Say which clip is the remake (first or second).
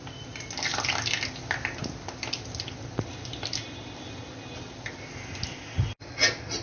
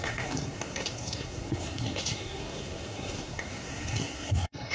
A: second